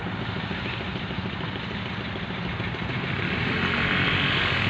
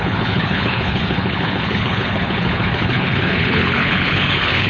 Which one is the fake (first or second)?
second